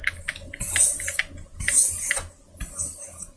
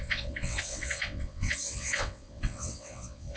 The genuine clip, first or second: first